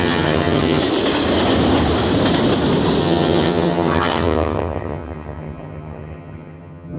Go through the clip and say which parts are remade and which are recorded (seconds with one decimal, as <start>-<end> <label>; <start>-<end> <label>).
0.0-0.8 remade; 0.8-3.0 recorded; 3.0-7.0 remade